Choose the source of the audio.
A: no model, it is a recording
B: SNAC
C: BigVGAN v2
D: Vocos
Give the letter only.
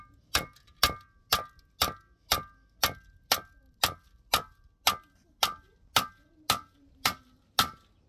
A